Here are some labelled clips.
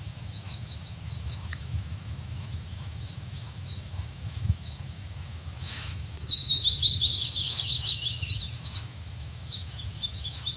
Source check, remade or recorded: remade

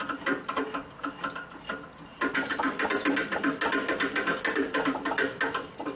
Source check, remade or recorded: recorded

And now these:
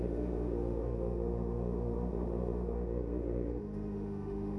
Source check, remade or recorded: remade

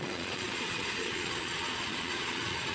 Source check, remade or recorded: remade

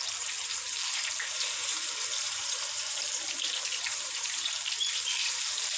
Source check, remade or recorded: remade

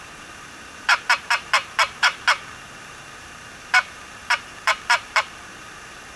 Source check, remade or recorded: remade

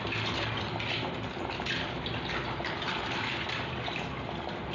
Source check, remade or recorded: recorded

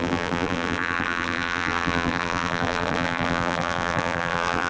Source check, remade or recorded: remade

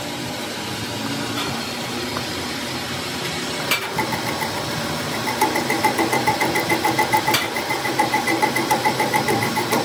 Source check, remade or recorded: recorded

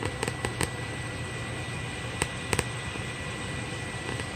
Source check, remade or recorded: recorded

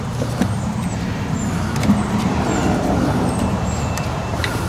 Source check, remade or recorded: remade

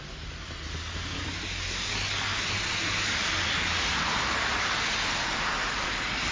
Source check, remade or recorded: recorded